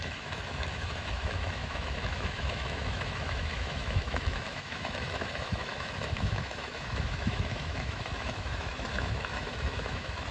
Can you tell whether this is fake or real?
fake